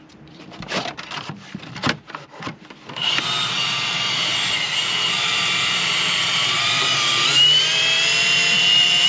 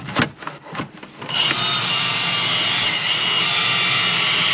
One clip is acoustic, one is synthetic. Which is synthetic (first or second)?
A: first